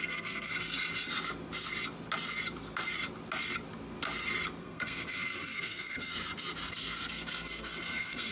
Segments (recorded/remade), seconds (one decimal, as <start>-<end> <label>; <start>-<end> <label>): 0.0-0.5 remade; 0.5-4.6 recorded; 4.6-6.1 remade; 6.1-6.7 recorded; 6.7-8.3 remade